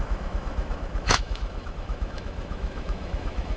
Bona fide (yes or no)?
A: no